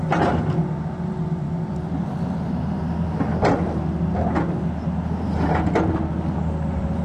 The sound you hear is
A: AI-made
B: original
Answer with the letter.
B